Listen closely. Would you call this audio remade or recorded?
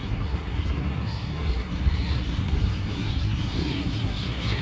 remade